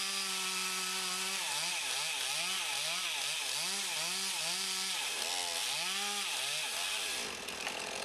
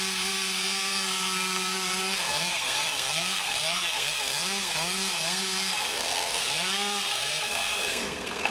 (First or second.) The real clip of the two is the first